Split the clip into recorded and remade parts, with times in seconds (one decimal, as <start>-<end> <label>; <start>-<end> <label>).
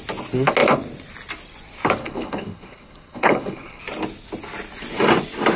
0.0-2.0 recorded; 2.0-3.8 remade; 3.8-5.6 recorded